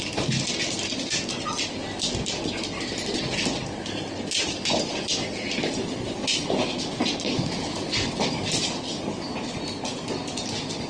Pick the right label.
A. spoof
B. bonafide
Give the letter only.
B